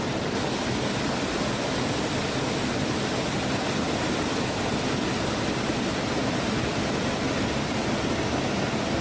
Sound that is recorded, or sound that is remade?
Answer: recorded